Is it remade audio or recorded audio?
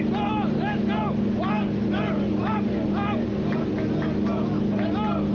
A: recorded